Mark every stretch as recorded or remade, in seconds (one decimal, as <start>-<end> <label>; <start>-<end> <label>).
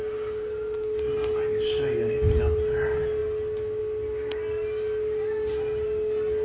0.0-6.4 recorded